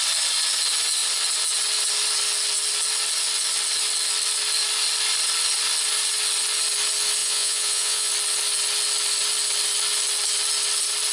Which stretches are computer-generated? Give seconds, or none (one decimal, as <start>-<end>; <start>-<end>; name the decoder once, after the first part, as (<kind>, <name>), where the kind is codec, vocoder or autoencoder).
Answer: 7.2-8.1 (vocoder, Vocos)